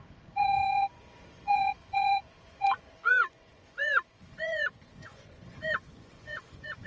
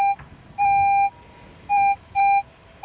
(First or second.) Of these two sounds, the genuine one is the second